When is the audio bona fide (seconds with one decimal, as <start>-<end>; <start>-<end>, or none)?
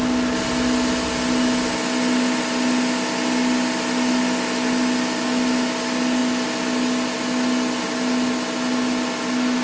0.0-9.6